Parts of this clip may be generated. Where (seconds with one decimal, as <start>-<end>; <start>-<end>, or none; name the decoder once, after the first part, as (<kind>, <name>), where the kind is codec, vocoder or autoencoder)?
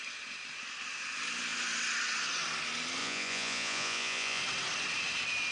3.0-4.4 (vocoder, Vocos)